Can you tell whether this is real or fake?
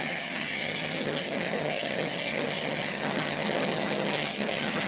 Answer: fake